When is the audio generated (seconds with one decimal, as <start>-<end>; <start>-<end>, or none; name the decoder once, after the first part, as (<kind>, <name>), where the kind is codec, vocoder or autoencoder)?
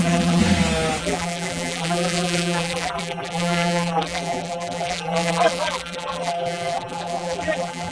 0.0-0.4 (vocoder, BigVGAN v2); 1.0-7.9